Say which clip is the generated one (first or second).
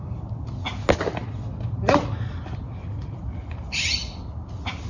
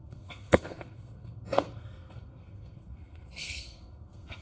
second